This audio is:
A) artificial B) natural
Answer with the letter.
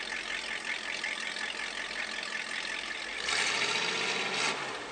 B